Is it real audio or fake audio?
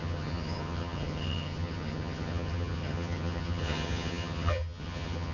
fake